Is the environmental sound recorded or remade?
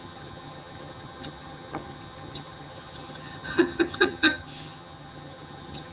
remade